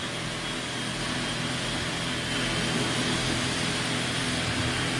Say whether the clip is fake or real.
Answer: real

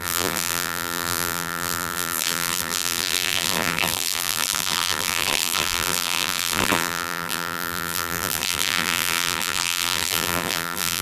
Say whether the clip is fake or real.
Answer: fake